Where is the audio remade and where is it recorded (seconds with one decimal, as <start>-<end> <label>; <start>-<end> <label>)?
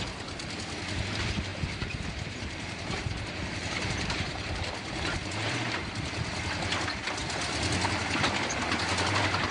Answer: 0.0-1.5 recorded; 1.5-5.0 remade; 5.0-5.4 recorded; 5.4-6.1 remade; 6.1-9.5 recorded